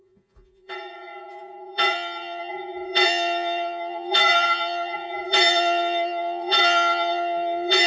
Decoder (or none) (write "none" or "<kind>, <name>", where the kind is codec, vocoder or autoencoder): vocoder, Vocos